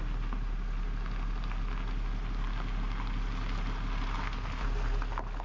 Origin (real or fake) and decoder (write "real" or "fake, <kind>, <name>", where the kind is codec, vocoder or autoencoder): real